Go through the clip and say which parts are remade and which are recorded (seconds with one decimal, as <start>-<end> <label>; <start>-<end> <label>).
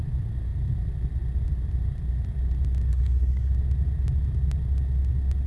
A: 0.0-2.9 recorded; 2.9-3.5 remade; 3.5-5.5 recorded